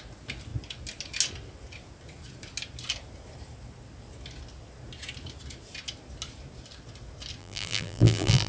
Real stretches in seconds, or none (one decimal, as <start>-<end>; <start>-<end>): 0.0-7.4